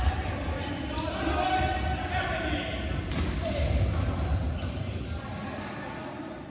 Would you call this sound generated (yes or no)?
no